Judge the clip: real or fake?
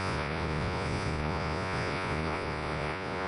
fake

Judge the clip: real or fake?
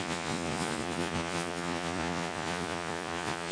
fake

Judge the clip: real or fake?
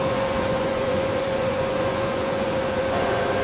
fake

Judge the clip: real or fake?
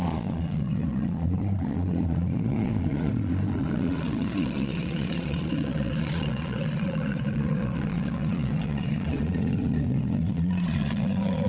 fake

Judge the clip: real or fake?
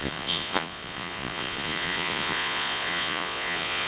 fake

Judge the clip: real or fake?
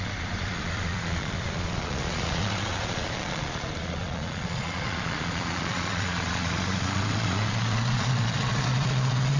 fake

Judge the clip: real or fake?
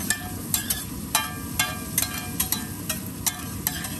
real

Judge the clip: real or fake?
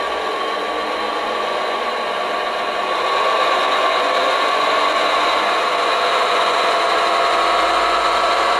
fake